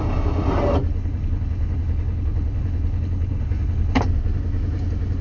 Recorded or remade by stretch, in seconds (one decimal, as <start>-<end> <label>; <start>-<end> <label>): 0.0-0.9 recorded; 0.9-4.0 remade; 4.0-5.2 recorded